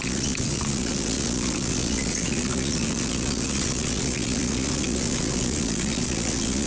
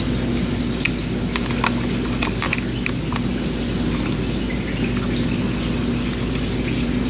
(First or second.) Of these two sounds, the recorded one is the second